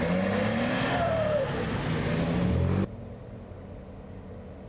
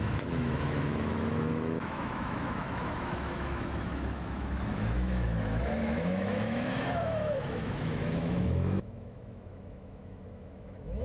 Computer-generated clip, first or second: second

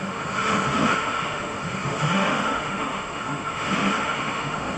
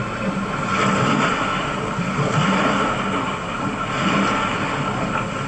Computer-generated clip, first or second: first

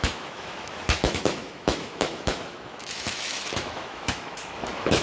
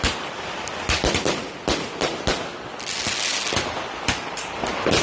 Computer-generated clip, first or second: first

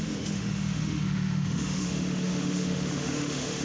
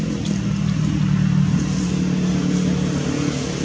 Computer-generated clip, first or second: first